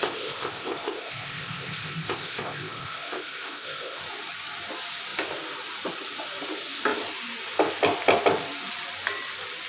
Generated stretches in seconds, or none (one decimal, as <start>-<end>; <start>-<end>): 0.0-4.0